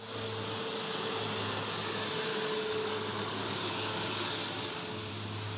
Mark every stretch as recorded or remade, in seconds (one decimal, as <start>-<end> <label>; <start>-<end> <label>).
0.0-2.3 recorded; 2.3-5.1 remade; 5.1-5.6 recorded

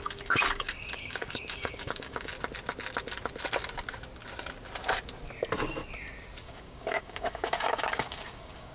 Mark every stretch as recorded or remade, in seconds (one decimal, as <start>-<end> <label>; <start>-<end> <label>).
0.0-2.3 remade; 2.3-6.4 recorded; 6.4-8.7 remade

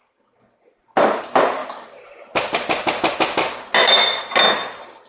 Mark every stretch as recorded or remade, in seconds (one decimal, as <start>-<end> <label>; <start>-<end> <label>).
0.0-5.1 recorded

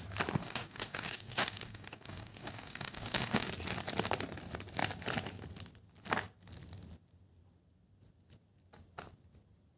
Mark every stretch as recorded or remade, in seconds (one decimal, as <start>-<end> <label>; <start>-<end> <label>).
0.0-0.4 recorded; 0.4-3.5 remade; 3.5-9.8 recorded

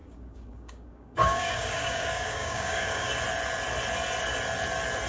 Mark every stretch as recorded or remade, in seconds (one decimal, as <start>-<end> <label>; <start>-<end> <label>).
0.0-3.1 remade; 3.1-5.1 recorded

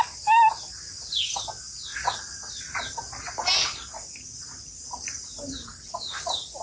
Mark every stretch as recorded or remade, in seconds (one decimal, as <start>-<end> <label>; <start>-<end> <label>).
0.0-6.6 recorded